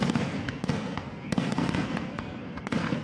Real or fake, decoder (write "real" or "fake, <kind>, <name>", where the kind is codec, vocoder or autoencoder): fake, codec, SNAC